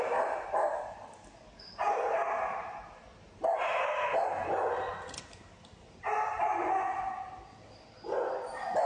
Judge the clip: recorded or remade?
recorded